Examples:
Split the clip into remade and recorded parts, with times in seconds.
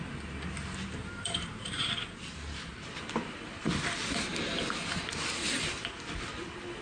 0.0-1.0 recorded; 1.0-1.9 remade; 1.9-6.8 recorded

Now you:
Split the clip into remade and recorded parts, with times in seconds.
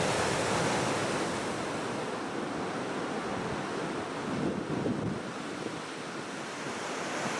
0.0-7.4 recorded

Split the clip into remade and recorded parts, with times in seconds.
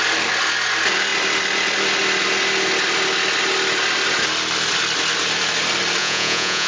0.0-6.0 recorded; 6.0-6.7 remade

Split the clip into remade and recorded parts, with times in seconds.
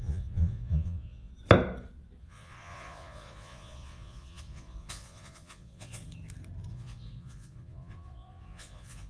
0.0-1.3 remade; 1.3-2.2 recorded; 2.2-6.0 remade; 6.0-6.7 recorded; 6.7-9.1 remade